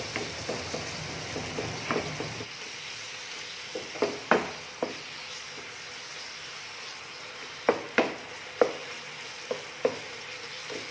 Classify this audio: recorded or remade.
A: recorded